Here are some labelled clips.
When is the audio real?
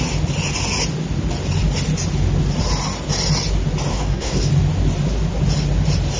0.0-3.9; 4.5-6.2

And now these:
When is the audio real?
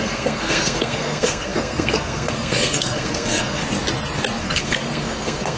3.6-4.4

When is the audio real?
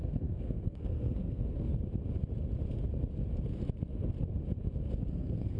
1.7-5.1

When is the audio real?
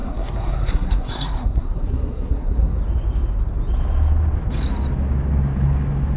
2.8-6.2